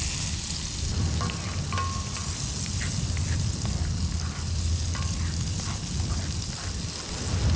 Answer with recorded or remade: recorded